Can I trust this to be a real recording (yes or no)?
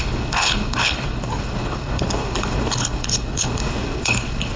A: no